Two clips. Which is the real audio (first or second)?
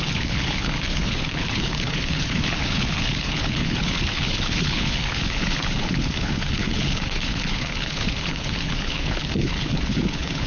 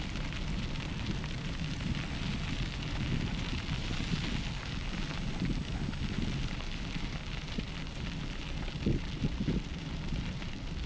second